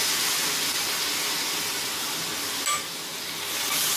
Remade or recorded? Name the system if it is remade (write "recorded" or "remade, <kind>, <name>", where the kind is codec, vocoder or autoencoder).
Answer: recorded